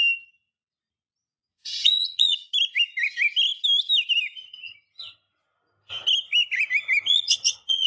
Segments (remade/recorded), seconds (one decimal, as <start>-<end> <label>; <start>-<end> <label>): 0.0-1.5 recorded; 1.5-2.5 remade; 2.5-7.1 recorded; 7.1-7.9 remade